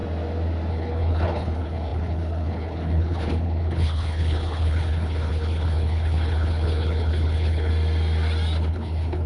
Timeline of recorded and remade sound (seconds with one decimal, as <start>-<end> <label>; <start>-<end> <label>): 0.0-0.7 recorded; 0.7-7.7 remade; 7.7-8.7 recorded; 8.7-9.3 remade